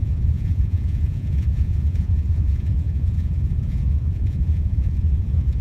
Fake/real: fake